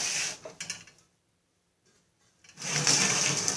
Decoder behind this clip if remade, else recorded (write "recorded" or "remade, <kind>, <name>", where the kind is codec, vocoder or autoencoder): recorded